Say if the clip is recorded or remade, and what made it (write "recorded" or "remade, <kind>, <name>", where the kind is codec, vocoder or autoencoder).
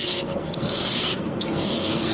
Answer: remade, codec, SNAC